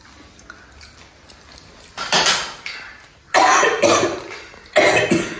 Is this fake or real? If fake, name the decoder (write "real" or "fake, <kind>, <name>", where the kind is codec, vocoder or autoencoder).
real